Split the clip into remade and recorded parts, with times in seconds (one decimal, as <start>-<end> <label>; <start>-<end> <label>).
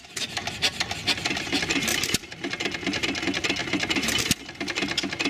0.0-1.9 recorded; 1.9-3.2 remade; 3.2-3.6 recorded; 3.6-4.2 remade; 4.2-5.3 recorded